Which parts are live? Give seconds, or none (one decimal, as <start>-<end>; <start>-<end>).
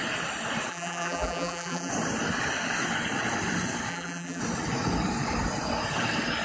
0.0-0.7; 1.9-3.9; 4.4-6.4